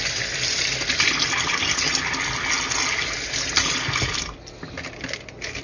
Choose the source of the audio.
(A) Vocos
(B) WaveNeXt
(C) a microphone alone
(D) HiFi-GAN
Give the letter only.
C